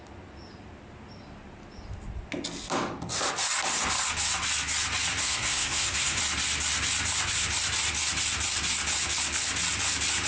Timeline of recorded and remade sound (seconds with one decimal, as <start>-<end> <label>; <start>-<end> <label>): 0.0-5.2 recorded; 5.2-6.2 remade; 6.2-10.3 recorded